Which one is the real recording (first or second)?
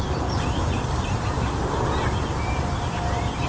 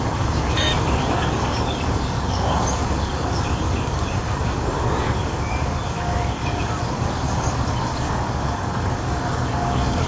first